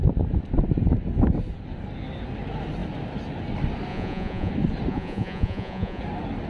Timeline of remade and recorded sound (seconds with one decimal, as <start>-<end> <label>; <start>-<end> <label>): 0.0-3.9 recorded; 3.9-4.5 remade; 4.5-4.9 recorded; 4.9-6.0 remade; 6.0-6.5 recorded